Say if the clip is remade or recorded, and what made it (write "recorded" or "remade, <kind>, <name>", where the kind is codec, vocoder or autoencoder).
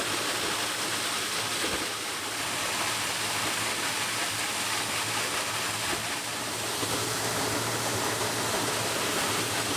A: recorded